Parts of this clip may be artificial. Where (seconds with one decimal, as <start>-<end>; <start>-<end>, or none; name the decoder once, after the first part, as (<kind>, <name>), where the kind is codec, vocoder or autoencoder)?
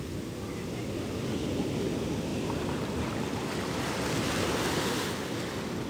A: 2.3-4.1 (vocoder, BigVGAN v2)